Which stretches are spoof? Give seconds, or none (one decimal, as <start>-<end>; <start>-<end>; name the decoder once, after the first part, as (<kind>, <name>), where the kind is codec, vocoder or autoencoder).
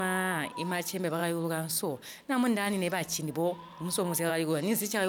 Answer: none